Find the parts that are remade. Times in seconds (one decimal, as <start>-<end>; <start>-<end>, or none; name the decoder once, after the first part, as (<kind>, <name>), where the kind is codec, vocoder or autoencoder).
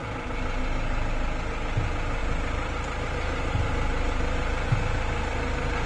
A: 0.0-0.6 (vocoder, BigVGAN v2); 2.2-5.9